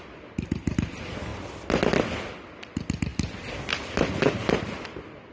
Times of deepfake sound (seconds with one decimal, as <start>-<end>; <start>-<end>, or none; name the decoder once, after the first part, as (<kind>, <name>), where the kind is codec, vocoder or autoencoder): none